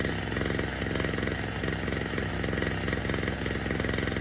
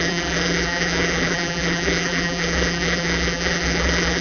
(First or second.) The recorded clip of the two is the first